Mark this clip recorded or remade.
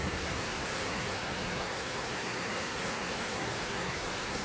remade